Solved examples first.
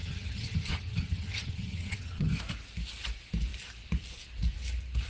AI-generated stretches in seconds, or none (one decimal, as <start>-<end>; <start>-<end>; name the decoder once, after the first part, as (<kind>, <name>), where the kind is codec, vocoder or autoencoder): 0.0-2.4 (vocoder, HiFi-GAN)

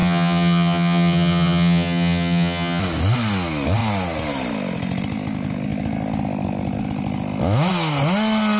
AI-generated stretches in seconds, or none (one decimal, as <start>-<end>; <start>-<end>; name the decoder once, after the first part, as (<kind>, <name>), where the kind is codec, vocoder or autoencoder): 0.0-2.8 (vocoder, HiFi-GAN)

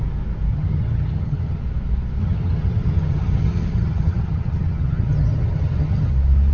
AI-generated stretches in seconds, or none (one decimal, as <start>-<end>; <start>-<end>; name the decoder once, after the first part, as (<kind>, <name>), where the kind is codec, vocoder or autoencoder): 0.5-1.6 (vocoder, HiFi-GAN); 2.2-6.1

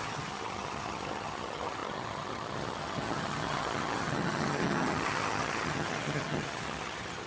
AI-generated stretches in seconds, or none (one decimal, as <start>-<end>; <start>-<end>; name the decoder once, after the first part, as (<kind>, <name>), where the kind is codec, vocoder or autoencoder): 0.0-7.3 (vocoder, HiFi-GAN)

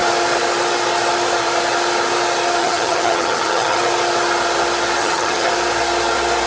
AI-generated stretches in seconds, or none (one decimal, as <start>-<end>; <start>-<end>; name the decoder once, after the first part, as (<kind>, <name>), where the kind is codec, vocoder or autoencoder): 2.6-3.8 (vocoder, HiFi-GAN); 5.0-5.5

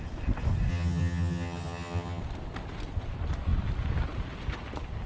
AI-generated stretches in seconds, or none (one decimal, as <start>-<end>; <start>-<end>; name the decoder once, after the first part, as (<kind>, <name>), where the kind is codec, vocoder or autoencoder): 0.7-2.2 (vocoder, HiFi-GAN)

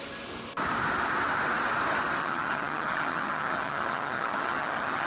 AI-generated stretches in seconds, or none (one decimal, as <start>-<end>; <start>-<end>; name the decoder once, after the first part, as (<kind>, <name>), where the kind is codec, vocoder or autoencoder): 2.2-5.1 (vocoder, HiFi-GAN)